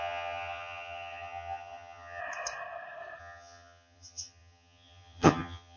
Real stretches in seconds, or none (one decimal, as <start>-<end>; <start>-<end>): 2.2-3.2